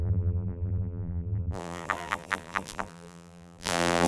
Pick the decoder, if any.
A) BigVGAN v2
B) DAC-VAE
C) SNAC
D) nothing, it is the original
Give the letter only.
A